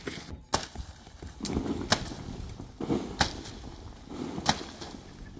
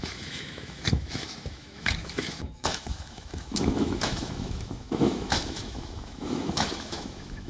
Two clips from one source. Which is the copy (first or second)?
second